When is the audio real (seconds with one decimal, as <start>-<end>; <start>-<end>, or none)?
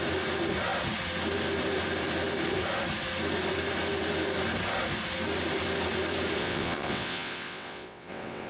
0.0-6.4